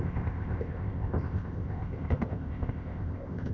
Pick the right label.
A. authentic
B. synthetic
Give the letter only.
B